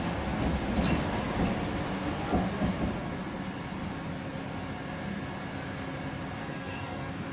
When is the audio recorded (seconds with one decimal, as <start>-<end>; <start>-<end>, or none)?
0.0-6.4